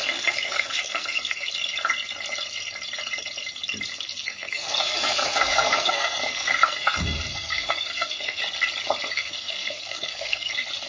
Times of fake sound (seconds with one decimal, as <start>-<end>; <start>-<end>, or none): 0.0-1.5; 3.9-8.4; 9.1-10.5